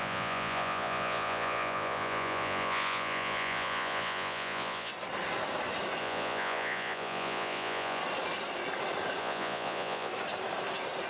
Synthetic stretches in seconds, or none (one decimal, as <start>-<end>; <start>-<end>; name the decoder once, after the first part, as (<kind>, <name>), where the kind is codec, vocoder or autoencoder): 0.0-4.9 (vocoder, Vocos); 6.0-8.0; 9.2-10.1